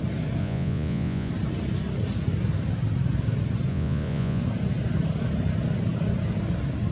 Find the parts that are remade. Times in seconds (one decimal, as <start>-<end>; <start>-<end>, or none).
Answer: 0.4-1.3; 3.7-4.4